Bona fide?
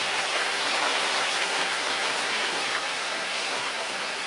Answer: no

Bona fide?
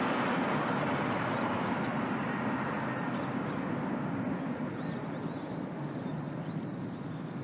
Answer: yes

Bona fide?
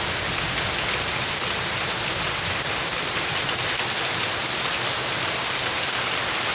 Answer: yes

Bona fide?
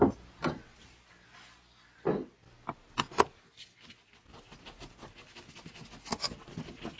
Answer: yes